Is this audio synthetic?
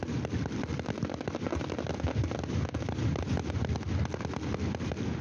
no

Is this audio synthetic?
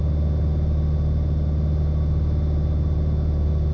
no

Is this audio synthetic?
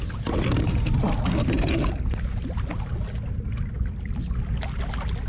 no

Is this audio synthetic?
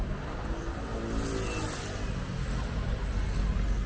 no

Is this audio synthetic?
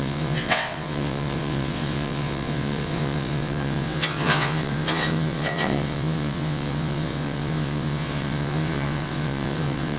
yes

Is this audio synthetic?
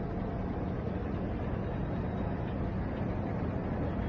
no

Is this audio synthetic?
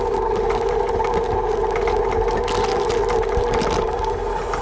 no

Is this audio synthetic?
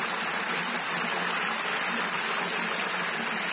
no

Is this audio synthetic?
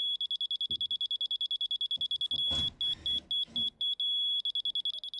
no